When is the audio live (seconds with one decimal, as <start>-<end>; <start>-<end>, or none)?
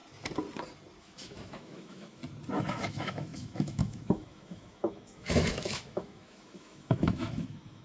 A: 0.0-1.0; 2.2-2.7